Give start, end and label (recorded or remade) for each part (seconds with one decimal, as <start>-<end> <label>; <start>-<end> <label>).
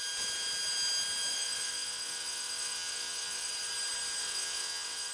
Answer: 0.0-1.3 recorded; 1.3-3.5 remade; 3.5-4.2 recorded; 4.2-5.1 remade